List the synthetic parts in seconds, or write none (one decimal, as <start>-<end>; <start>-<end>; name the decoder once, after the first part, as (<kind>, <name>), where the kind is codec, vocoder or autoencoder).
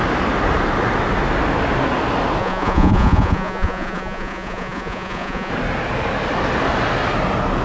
2.4-5.5 (vocoder, Vocos)